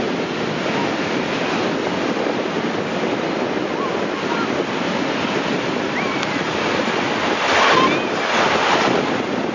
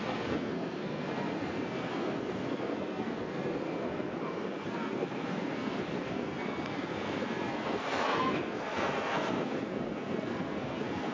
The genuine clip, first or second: first